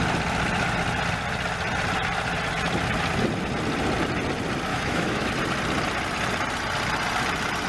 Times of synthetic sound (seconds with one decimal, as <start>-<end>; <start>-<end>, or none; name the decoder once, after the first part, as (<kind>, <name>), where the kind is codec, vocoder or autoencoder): 4.7-5.3 (autoencoder, DAC-VAE)